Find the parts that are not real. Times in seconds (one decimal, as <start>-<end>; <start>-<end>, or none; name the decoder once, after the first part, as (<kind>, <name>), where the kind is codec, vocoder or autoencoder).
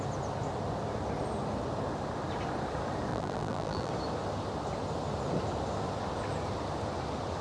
3.1-3.9 (vocoder, BigVGAN v2)